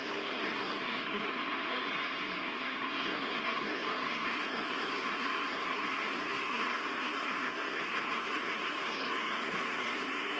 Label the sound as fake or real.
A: fake